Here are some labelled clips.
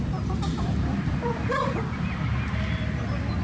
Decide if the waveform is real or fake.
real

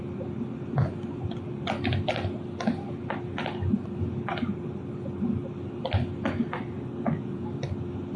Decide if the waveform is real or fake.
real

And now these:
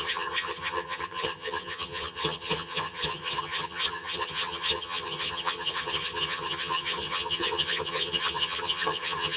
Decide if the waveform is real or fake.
fake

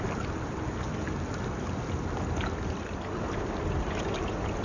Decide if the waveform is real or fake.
real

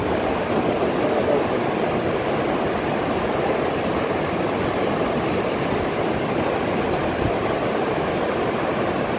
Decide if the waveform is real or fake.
real